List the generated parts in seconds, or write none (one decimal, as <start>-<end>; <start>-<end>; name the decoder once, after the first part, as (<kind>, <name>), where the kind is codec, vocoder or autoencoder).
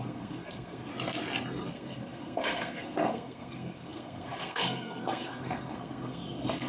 0.0-0.9 (codec, SNAC); 1.7-6.7